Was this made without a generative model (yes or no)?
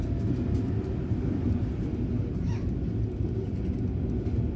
yes